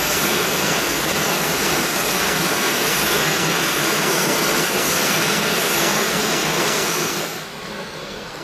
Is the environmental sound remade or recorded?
remade